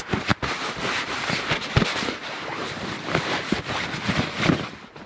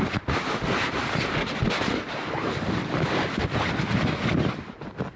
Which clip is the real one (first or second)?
second